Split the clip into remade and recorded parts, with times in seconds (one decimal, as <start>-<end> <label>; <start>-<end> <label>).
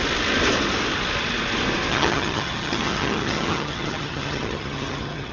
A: 0.0-1.9 recorded; 1.9-5.3 remade